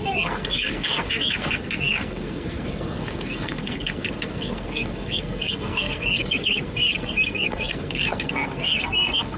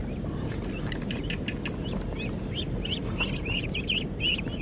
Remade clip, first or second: first